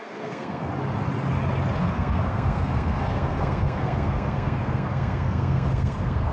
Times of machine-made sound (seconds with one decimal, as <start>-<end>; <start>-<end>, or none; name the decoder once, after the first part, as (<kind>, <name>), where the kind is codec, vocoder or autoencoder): 0.0-0.7 (codec, SNAC); 1.8-6.3